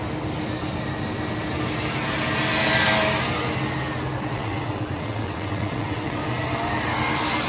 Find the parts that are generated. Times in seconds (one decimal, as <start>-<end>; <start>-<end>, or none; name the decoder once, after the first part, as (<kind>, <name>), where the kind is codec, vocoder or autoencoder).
4.2-6.2 (vocoder, WaveNeXt)